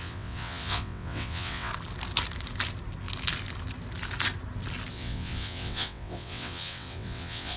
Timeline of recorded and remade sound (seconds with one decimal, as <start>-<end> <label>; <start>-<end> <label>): 0.0-1.7 remade; 1.7-4.9 recorded; 4.9-7.6 remade